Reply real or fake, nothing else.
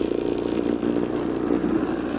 real